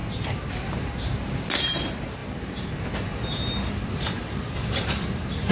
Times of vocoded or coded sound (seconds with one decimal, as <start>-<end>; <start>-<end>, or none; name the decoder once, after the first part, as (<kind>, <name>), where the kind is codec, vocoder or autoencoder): 0.0-5.5 (vocoder, BigVGAN v2)